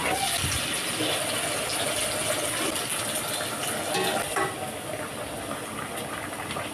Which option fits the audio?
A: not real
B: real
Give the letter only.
B